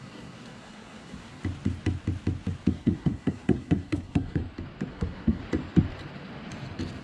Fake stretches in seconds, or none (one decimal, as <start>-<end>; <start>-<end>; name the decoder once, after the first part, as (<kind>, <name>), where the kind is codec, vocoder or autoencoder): 0.0-1.4 (codec, SNAC); 2.7-4.4; 4.9-5.4